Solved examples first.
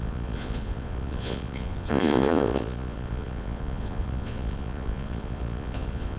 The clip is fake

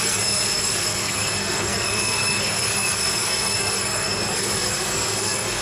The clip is fake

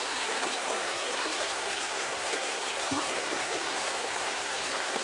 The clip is fake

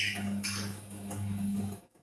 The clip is fake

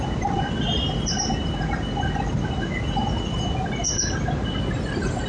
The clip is real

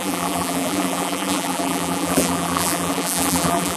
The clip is fake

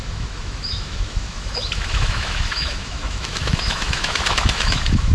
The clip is fake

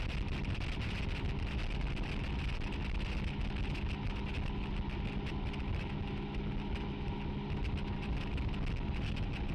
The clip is real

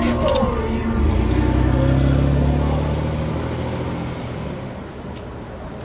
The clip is real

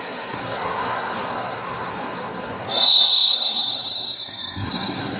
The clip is fake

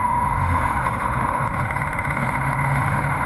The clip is fake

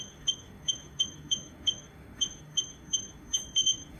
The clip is fake